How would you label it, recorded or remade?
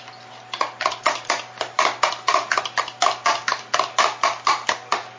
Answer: recorded